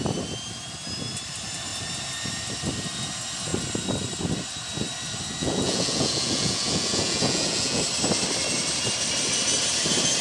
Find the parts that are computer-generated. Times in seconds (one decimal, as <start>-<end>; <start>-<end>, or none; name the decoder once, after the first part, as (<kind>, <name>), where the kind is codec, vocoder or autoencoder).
5.4-7.8 (vocoder, Vocos)